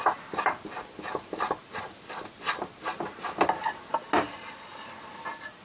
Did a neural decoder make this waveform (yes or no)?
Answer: no